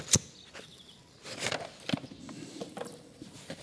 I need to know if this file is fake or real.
real